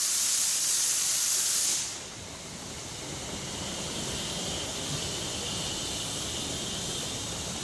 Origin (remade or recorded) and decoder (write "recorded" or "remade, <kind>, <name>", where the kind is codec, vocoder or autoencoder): recorded